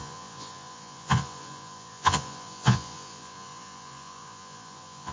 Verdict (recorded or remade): remade